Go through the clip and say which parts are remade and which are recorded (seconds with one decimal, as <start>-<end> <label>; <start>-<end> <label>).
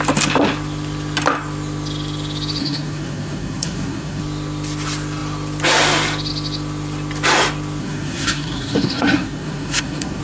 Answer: 0.0-2.6 recorded; 2.6-4.2 remade; 4.2-7.8 recorded; 7.8-10.2 remade